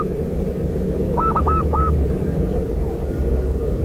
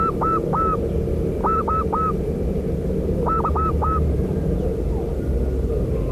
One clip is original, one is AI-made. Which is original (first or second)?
second